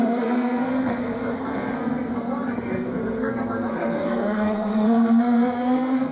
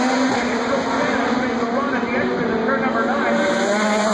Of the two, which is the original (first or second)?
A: second